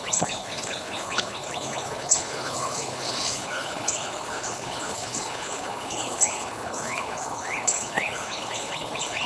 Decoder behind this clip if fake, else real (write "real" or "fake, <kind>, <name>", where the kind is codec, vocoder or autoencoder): fake, codec, HILCodec